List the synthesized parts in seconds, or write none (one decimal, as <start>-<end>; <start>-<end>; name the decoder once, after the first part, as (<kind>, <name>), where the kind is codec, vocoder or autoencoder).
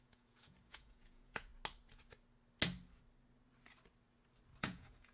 0.0-1.5 (vocoder, Vocos); 4.6-5.1